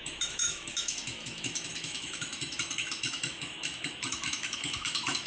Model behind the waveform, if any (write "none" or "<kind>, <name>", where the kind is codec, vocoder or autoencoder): autoencoder, DAC-VAE